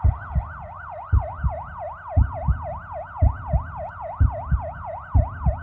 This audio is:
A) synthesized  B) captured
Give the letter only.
B